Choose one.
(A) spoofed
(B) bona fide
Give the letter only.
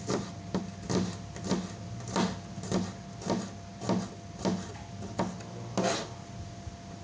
B